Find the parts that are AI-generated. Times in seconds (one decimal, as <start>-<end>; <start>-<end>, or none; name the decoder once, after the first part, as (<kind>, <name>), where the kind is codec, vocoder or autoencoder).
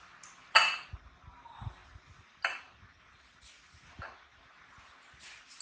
none